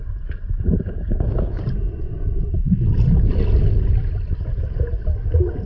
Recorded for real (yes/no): yes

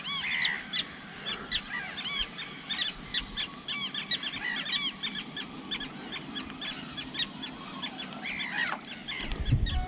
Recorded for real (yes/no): yes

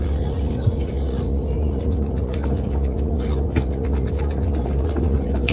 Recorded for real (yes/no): no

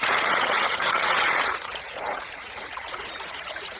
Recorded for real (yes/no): no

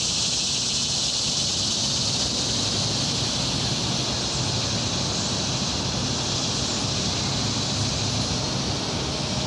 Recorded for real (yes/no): yes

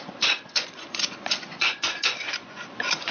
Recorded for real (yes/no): no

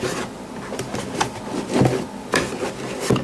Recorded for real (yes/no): yes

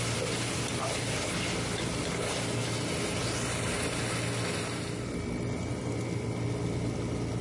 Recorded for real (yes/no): yes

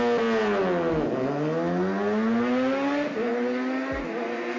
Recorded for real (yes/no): yes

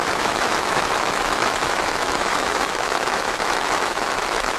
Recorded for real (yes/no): no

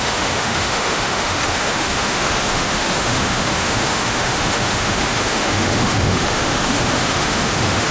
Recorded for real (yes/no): no